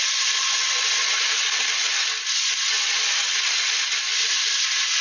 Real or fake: real